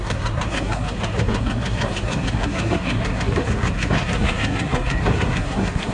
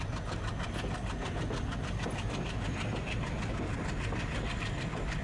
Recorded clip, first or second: second